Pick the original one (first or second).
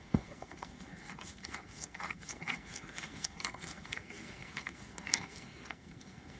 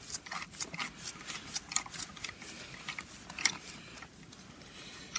second